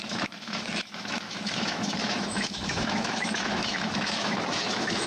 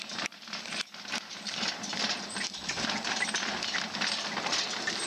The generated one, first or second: first